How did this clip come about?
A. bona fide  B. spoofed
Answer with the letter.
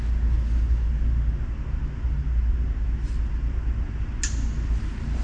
A